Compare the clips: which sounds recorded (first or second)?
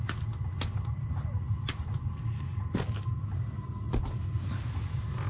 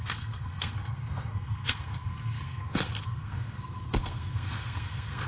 first